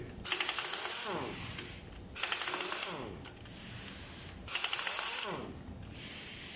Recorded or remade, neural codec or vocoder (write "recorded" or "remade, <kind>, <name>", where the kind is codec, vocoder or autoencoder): recorded